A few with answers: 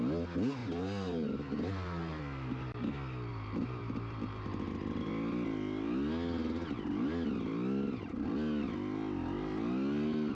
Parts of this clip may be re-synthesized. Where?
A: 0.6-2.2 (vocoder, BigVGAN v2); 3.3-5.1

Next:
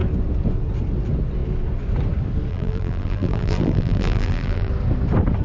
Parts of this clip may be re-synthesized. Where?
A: 2.5-4.7 (vocoder, BigVGAN v2)

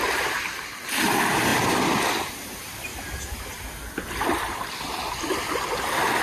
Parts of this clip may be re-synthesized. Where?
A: 2.9-3.7 (vocoder, BigVGAN v2)